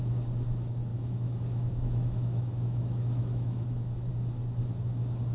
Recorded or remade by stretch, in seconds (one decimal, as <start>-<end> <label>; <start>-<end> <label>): 0.0-0.9 recorded; 0.9-4.1 remade; 4.1-5.3 recorded